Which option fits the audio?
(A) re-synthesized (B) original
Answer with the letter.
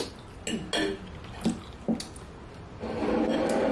B